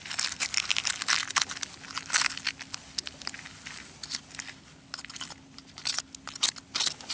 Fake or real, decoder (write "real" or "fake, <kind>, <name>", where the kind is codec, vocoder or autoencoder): real